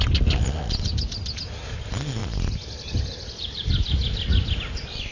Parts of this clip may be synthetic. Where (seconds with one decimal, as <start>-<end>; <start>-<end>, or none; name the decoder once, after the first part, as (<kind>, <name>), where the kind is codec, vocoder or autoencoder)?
none